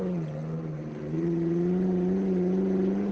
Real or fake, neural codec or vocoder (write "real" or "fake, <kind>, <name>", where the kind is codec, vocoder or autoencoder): real